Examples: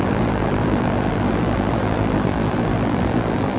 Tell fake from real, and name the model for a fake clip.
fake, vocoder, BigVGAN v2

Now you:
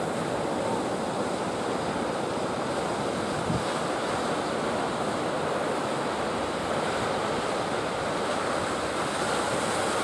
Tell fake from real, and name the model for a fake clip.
real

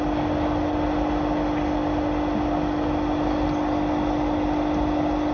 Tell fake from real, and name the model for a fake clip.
real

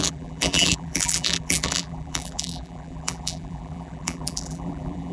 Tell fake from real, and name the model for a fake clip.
fake, vocoder, BigVGAN v2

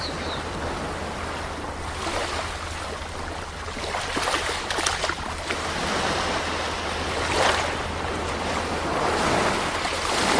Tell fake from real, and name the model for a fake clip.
real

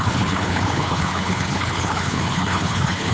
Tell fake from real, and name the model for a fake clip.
fake, codec, HILCodec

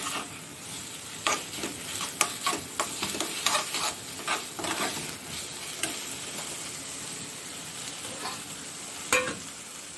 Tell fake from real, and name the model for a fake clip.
real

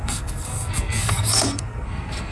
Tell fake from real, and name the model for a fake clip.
fake, codec, SNAC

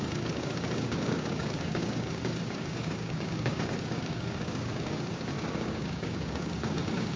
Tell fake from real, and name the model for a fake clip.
fake, codec, DAC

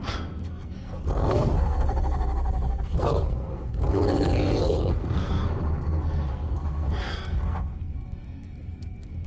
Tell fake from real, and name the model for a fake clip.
fake, codec, SNAC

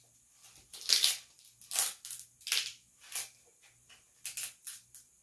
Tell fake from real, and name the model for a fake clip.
real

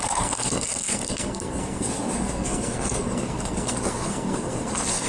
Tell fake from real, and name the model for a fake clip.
fake, codec, SNAC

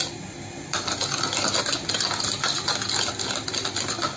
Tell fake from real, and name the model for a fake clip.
real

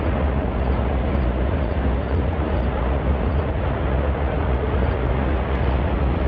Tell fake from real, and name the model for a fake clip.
fake, vocoder, Vocos